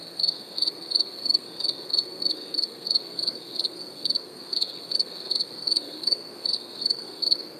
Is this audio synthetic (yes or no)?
yes